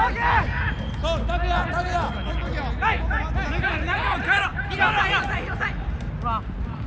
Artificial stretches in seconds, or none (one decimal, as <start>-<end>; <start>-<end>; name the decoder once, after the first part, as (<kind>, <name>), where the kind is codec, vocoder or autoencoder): none